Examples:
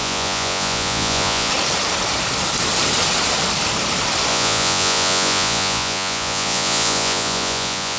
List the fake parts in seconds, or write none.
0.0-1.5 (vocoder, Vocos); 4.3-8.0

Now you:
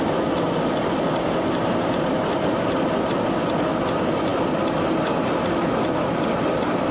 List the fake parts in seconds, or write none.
none

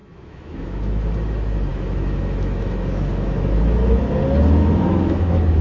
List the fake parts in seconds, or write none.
0.0-1.1 (autoencoder, DAC-VAE); 1.7-4.0; 4.6-5.6

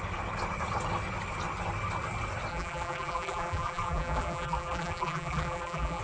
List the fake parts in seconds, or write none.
2.5-6.0 (vocoder, BigVGAN v2)

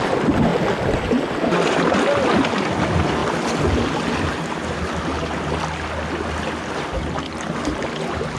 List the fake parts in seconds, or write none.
none